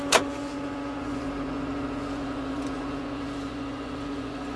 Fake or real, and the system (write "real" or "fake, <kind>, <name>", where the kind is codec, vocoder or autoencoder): fake, vocoder, Vocos